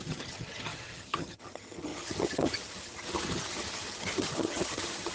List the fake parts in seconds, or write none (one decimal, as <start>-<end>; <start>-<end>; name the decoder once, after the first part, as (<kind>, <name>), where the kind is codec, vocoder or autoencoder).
0.0-5.1 (vocoder, HiFi-GAN)